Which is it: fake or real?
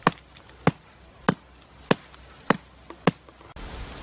real